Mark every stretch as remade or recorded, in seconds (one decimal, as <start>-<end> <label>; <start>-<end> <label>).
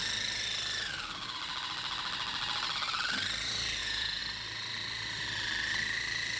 0.0-3.8 recorded; 3.8-4.2 remade; 4.2-6.4 recorded